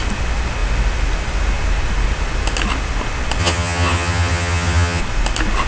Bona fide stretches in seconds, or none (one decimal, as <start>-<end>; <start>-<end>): 0.0-3.4; 5.0-5.7

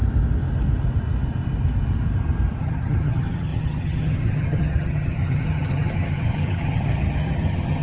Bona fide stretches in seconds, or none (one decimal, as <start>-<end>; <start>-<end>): 0.0-2.6

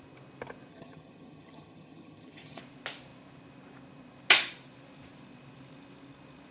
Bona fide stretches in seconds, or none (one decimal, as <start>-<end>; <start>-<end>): 0.0-0.7; 2.6-6.5

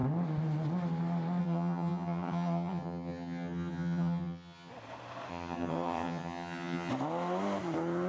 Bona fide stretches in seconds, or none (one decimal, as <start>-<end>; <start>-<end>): 0.0-1.4; 4.7-5.3; 6.9-8.1

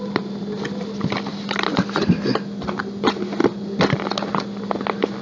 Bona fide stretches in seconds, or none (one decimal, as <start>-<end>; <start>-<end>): 0.0-5.2

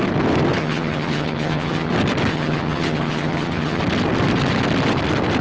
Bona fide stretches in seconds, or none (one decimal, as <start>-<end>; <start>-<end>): 0.0-0.6; 1.9-2.3; 3.8-5.4

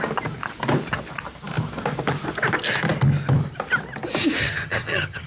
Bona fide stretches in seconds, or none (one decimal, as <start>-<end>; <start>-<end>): 0.0-4.4